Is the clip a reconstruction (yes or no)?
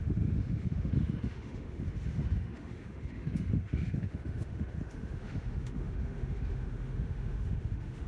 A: yes